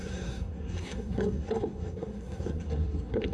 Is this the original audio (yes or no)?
no